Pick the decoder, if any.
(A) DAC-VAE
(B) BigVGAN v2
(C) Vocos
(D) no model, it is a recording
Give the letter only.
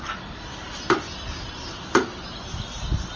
B